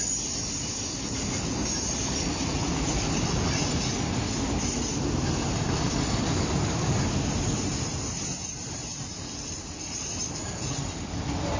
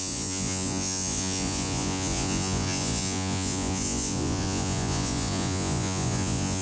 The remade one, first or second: second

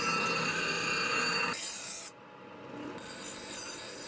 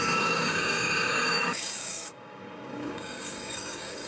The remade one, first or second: second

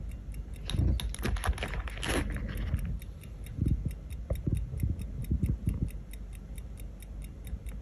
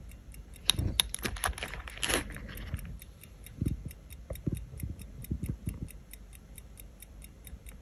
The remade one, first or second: second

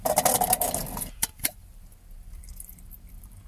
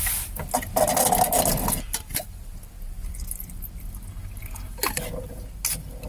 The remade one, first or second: first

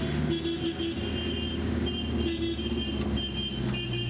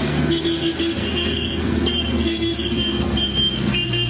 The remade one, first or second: second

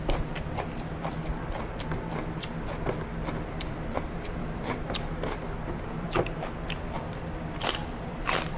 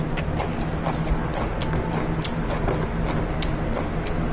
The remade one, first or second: first